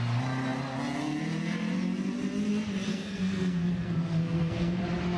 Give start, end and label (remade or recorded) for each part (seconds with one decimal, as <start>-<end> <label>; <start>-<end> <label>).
0.0-2.9 recorded; 2.9-4.8 remade; 4.8-5.2 recorded